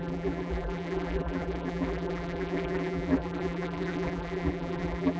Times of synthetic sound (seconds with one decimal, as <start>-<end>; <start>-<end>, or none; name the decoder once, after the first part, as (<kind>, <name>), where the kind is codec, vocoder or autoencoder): 0.0-5.2 (vocoder, BigVGAN v2)